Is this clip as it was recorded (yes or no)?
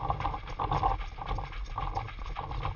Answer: yes